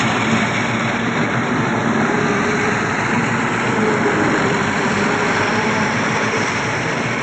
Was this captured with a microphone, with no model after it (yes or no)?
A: no